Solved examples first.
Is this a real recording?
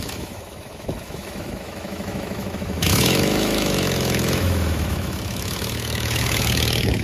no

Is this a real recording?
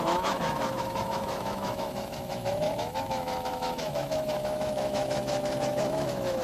no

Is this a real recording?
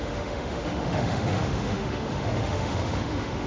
no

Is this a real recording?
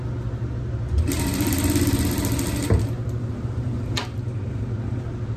yes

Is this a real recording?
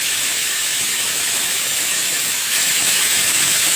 no